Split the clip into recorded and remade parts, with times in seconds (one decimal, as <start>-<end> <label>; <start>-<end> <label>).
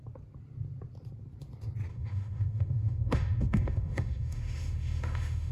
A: 0.0-1.9 recorded; 1.9-5.5 remade